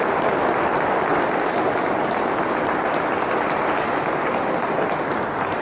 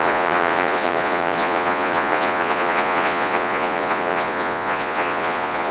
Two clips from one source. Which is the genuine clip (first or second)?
first